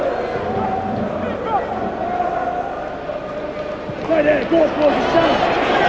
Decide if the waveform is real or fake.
real